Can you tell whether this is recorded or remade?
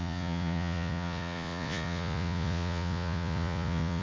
remade